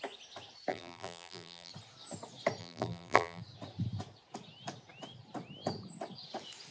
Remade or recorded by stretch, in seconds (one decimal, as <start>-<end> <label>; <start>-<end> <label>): 0.0-0.7 recorded; 0.7-1.7 remade; 1.7-2.6 recorded; 2.6-3.4 remade; 3.4-6.7 recorded